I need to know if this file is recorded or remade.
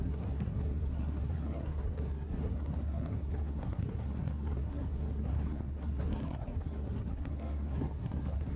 remade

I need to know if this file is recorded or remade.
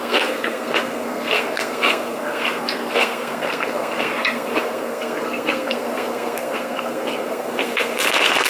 remade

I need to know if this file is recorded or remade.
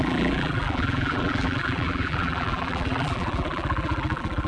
remade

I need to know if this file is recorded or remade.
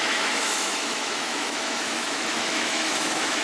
remade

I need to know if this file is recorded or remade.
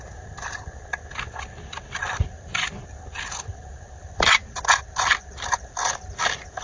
recorded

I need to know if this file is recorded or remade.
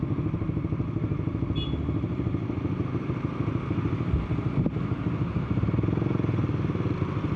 recorded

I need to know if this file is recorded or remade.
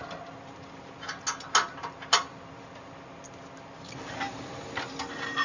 recorded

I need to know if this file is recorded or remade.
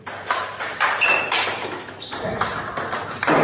recorded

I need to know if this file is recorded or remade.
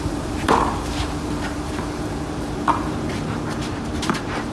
remade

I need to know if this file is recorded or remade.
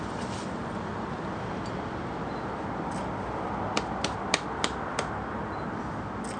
recorded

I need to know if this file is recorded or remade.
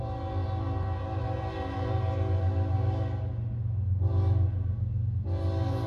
recorded